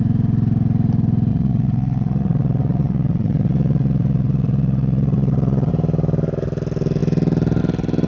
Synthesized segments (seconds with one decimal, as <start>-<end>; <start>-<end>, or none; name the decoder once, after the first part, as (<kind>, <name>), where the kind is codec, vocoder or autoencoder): 1.3-5.7 (vocoder, WaveNeXt)